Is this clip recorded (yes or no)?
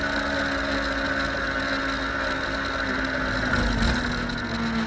yes